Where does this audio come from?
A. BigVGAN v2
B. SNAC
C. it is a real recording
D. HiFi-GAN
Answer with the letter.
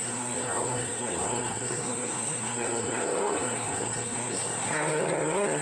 B